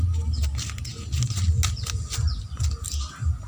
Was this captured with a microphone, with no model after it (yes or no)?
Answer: yes